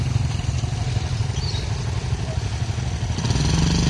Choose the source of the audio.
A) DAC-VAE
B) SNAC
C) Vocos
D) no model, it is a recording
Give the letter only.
D